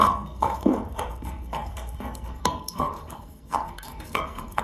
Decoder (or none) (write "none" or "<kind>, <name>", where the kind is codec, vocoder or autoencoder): codec, SNAC